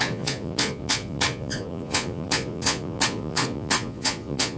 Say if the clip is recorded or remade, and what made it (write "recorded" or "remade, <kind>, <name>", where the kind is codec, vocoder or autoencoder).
remade, vocoder, Vocos